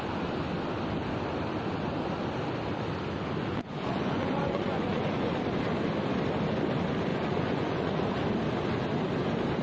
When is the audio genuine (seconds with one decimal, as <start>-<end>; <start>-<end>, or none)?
0.0-3.4; 5.3-7.1; 8.0-9.6